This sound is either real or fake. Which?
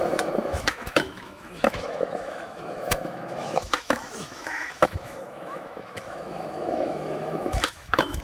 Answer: fake